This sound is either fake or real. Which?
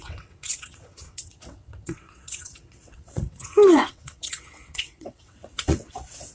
fake